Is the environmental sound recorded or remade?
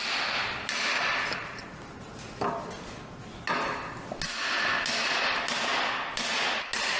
recorded